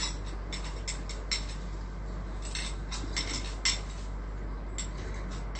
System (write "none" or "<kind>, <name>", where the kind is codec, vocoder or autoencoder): none